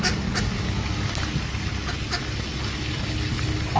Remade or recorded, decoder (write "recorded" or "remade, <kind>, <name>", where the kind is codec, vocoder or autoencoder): recorded